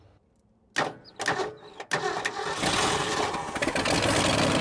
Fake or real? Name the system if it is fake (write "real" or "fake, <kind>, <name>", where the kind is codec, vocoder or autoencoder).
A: real